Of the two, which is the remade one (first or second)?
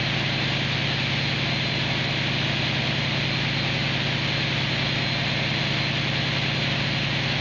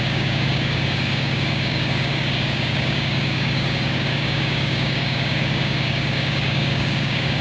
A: second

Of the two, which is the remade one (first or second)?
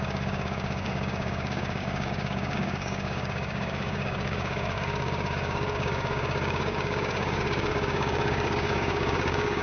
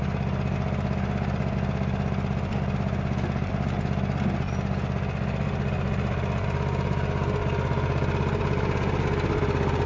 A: first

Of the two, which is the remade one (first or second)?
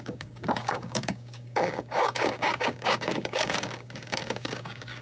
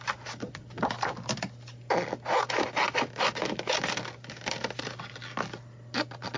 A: first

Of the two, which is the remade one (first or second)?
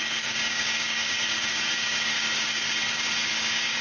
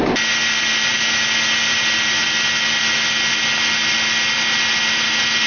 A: first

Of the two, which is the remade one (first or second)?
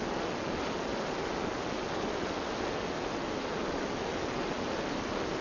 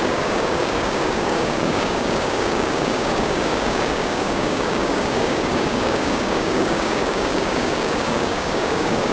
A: second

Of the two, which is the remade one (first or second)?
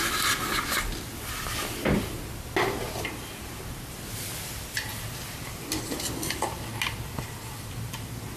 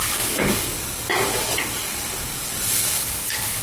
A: second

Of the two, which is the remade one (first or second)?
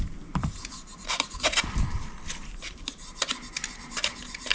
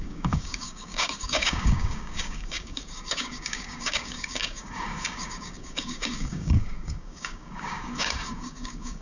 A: second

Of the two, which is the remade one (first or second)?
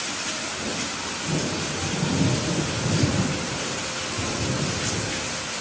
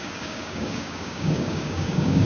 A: second